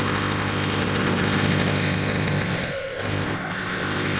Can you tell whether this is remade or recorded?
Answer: remade